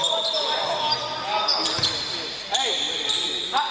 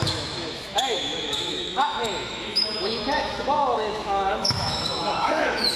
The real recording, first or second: first